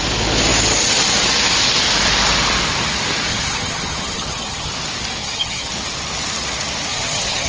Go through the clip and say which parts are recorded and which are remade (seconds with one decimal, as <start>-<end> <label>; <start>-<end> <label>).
0.0-3.3 recorded; 3.3-4.7 remade; 4.7-5.2 recorded; 5.2-5.7 remade; 5.7-6.9 recorded; 6.9-7.5 remade